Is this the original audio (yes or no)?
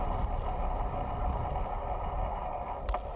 yes